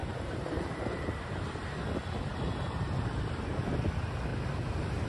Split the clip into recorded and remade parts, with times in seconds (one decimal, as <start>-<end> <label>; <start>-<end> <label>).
0.0-1.0 remade; 1.0-2.3 recorded; 2.3-3.8 remade; 3.8-4.3 recorded; 4.3-5.1 remade